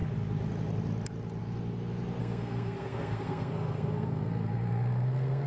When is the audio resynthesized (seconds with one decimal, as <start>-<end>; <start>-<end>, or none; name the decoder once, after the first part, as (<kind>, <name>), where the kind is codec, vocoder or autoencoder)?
2.2-5.5 (codec, SNAC)